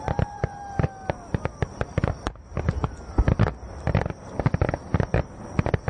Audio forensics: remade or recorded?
recorded